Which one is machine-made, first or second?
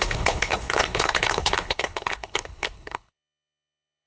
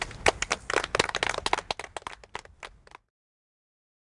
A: first